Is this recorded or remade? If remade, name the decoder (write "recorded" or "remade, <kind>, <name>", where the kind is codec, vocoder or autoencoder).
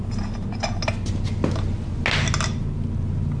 recorded